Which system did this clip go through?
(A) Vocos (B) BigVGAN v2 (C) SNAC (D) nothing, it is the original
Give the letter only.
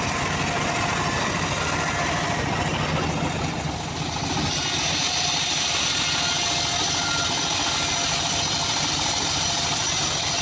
D